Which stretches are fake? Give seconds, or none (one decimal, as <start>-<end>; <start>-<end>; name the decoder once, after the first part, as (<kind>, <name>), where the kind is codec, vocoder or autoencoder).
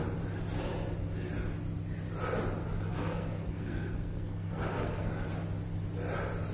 2.6-5.1 (codec, SNAC)